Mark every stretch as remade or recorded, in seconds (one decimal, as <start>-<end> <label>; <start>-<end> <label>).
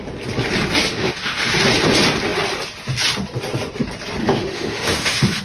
0.0-0.9 recorded; 0.9-1.5 remade; 1.5-4.2 recorded; 4.2-5.4 remade